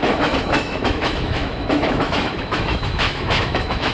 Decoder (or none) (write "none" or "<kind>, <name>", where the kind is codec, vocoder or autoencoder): autoencoder, DAC-VAE